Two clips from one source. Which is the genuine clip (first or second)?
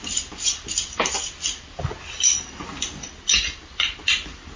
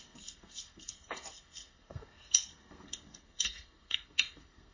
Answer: first